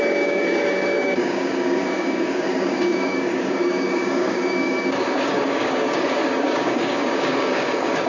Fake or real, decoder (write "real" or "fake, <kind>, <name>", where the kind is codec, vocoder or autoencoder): fake, codec, DAC